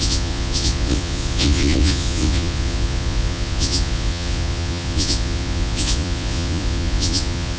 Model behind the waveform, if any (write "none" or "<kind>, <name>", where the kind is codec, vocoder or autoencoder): vocoder, Vocos